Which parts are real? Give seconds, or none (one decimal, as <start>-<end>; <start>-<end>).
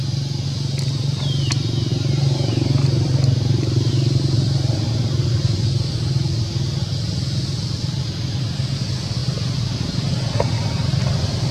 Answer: 0.0-1.9; 3.9-11.5